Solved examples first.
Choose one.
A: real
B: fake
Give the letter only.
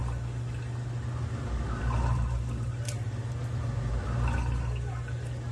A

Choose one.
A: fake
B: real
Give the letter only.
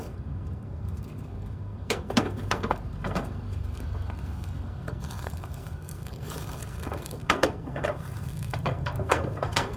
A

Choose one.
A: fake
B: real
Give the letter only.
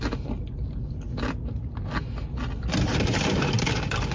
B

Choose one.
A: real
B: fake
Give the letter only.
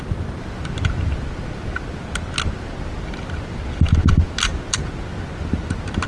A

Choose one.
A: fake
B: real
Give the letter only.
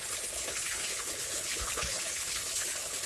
A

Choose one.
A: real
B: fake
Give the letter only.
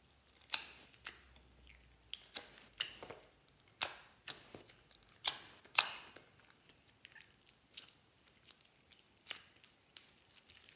A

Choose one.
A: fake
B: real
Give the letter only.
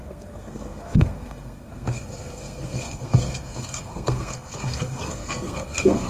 A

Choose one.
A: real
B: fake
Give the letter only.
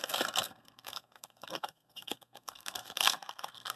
B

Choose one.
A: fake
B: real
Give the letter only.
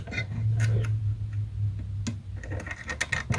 B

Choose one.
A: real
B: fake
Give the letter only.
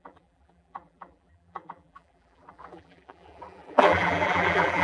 B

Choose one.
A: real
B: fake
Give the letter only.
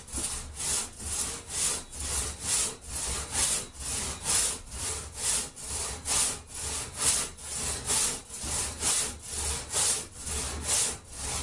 A